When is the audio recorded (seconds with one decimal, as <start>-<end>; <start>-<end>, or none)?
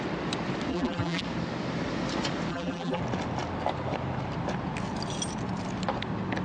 0.0-0.7; 1.2-2.5; 3.0-6.4